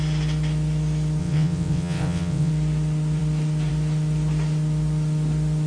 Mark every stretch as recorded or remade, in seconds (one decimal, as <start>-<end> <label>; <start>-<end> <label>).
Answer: 0.0-1.2 recorded; 1.2-2.5 remade; 2.5-5.7 recorded

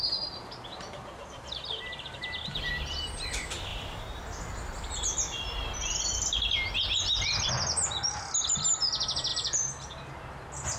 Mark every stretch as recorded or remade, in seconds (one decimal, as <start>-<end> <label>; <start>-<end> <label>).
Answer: 0.0-0.7 recorded; 0.7-2.7 remade; 2.7-9.3 recorded; 9.3-10.1 remade; 10.1-10.8 recorded